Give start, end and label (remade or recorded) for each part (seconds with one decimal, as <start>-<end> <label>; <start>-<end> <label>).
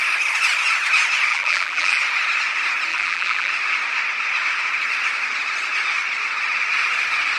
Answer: 0.0-1.3 recorded; 1.3-2.0 remade; 2.0-2.9 recorded; 2.9-3.5 remade; 3.5-7.4 recorded